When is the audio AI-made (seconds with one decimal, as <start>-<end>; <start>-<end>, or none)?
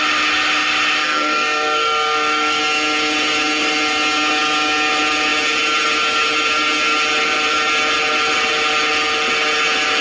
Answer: 1.0-2.6